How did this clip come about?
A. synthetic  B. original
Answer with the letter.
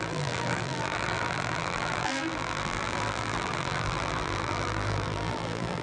A